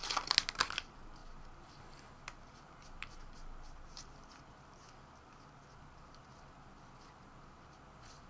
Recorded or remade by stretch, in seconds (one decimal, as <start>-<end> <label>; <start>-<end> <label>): 0.0-8.3 recorded